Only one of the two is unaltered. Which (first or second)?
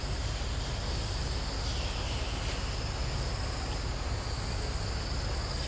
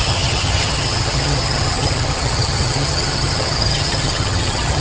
first